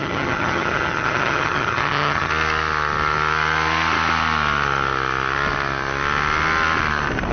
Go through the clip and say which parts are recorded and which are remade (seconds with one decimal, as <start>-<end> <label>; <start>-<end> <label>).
0.0-2.3 remade; 2.3-7.3 recorded